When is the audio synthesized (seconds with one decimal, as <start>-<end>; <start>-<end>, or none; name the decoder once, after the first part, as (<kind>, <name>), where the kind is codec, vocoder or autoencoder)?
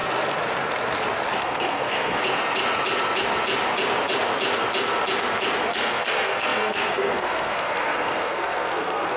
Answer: 1.4-2.2 (codec, SNAC); 5.7-9.2